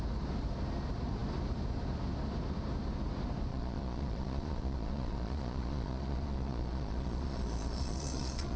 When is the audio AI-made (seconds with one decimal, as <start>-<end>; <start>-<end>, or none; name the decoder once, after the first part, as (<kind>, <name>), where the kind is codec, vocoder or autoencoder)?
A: 3.5-8.6 (vocoder, Vocos)

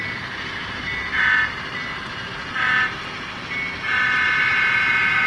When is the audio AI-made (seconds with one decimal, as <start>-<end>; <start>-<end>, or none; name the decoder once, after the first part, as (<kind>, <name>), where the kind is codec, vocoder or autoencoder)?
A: 4.5-5.3 (vocoder, Vocos)